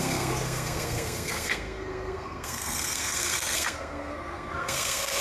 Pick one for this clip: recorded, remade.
remade